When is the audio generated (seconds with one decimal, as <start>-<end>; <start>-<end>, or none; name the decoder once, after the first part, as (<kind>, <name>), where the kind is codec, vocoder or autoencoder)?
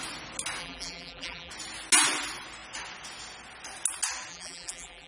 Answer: 0.6-1.5 (vocoder, BigVGAN v2); 4.3-5.1